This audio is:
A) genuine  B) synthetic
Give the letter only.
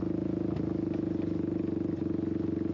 A